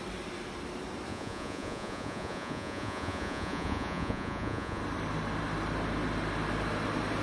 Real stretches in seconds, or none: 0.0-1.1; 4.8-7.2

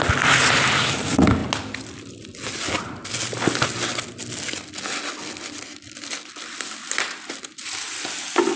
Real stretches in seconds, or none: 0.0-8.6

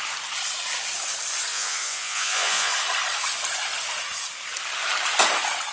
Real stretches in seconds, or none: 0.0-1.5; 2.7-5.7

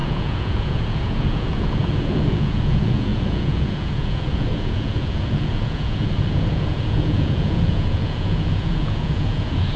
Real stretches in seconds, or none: none